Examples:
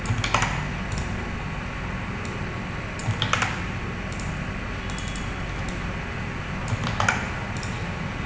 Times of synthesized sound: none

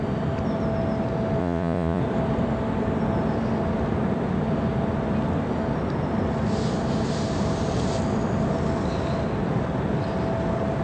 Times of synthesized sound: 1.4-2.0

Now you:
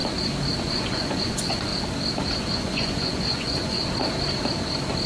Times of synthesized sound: 0.6-1.7; 2.4-3.8

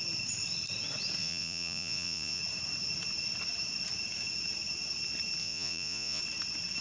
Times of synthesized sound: 1.2-2.4; 5.4-6.2

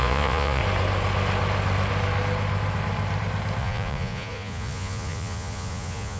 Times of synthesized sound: 0.0-0.6; 3.6-6.2

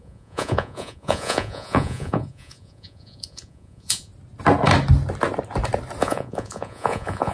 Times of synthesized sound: 0.0-4.1; 6.0-7.3

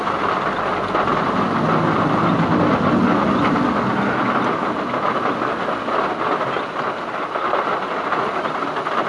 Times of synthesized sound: none

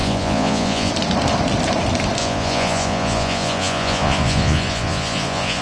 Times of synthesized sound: 0.0-0.9; 2.2-5.6